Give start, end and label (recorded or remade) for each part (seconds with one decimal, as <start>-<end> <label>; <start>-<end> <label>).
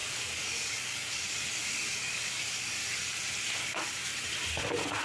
0.0-2.8 remade; 2.8-3.6 recorded; 3.6-4.1 remade; 4.1-5.0 recorded